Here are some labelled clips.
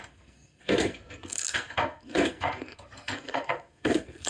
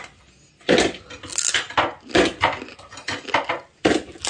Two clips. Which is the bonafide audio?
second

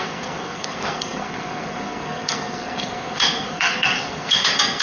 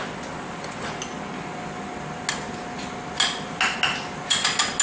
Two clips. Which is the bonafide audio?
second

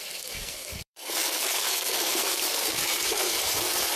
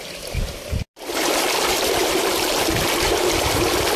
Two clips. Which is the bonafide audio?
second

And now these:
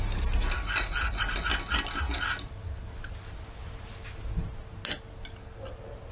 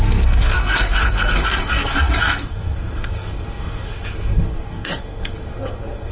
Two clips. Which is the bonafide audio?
first